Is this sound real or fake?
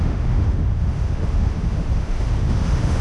fake